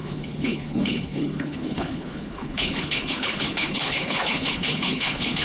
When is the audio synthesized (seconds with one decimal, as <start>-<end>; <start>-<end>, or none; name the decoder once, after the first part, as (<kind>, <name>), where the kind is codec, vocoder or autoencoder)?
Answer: 0.0-5.4 (codec, HILCodec)